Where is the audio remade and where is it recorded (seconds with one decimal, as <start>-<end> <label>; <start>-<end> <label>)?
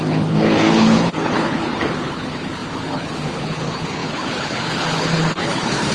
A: 0.0-5.9 remade